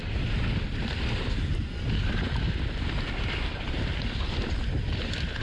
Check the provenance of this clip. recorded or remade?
recorded